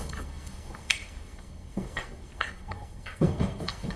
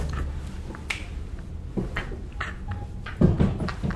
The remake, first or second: first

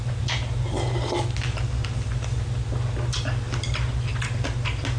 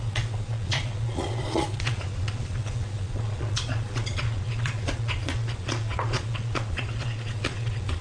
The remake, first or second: second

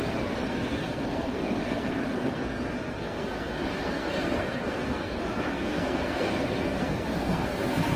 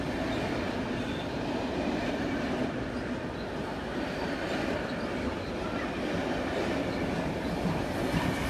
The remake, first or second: first